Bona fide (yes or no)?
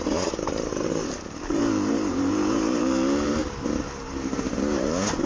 no